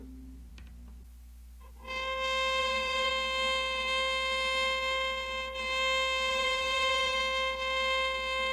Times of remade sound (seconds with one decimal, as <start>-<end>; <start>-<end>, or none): 2.6-3.1; 6.3-7.2